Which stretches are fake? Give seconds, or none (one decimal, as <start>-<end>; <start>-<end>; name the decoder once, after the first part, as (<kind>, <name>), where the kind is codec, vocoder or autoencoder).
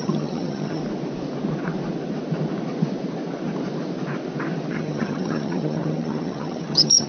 0.0-0.8 (vocoder, HiFi-GAN); 4.7-7.1